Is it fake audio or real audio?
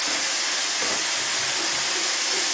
real